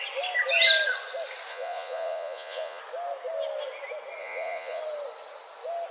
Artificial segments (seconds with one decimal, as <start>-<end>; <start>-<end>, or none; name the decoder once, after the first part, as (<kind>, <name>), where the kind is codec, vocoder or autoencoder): 1.5-2.8 (vocoder, Vocos); 4.2-4.8